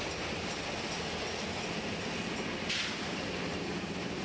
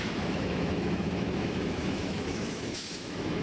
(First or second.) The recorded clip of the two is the first